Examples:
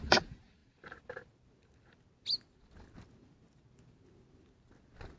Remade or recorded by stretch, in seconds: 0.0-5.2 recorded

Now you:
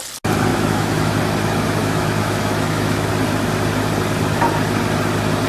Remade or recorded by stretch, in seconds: 0.0-0.5 recorded; 0.5-1.2 remade; 1.2-1.8 recorded; 1.8-3.1 remade; 3.1-5.5 recorded

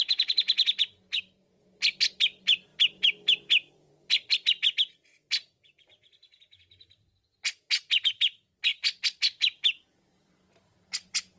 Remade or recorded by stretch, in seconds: 0.0-11.4 recorded

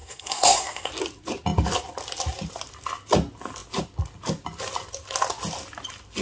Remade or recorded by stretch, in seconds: 0.0-0.9 remade; 0.9-6.2 recorded

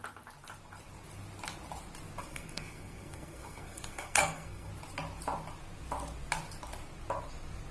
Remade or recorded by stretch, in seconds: 0.0-2.2 recorded; 2.2-4.7 remade; 4.7-7.7 recorded

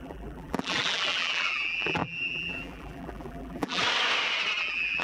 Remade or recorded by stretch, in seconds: 0.0-3.8 remade; 3.8-4.6 recorded; 4.6-5.0 remade